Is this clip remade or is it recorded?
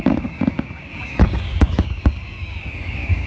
remade